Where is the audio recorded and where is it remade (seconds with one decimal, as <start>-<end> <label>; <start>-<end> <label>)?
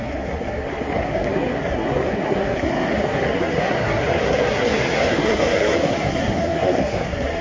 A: 0.0-7.4 remade